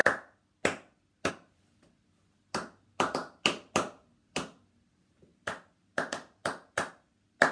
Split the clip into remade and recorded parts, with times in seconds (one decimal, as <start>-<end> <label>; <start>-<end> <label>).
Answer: 0.0-7.5 recorded